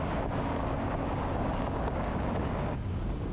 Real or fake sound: fake